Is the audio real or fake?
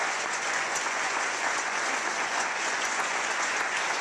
fake